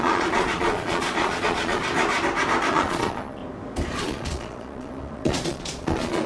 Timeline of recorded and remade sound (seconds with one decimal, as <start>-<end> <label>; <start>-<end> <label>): 0.0-1.8 remade; 1.8-2.7 recorded; 2.7-3.4 remade; 3.4-4.0 recorded; 4.0-6.3 remade